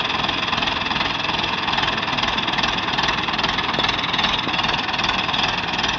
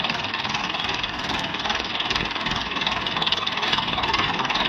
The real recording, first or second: first